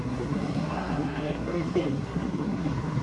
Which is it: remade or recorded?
remade